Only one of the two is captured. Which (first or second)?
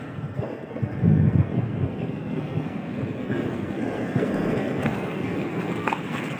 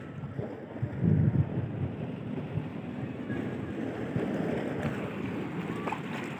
second